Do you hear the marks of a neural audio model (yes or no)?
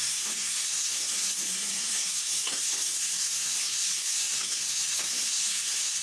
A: yes